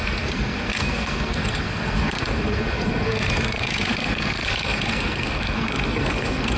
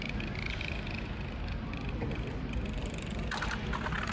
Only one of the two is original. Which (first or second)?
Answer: second